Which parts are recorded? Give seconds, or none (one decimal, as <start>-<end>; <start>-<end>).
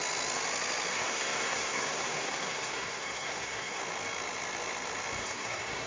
0.0-0.9; 3.8-5.2